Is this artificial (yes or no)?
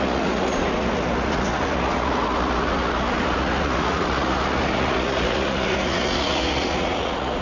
yes